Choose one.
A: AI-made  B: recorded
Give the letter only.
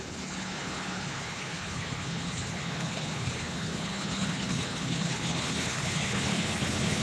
A